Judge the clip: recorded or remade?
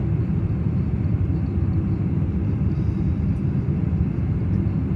recorded